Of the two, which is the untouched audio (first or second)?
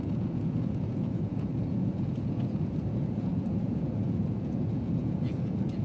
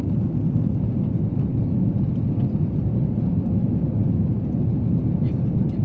second